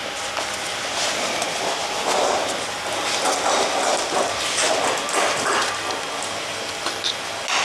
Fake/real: real